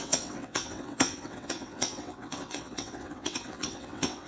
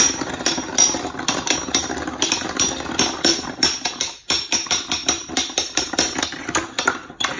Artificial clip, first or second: first